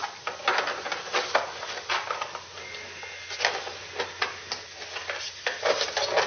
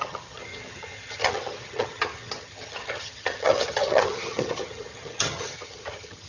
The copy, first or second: second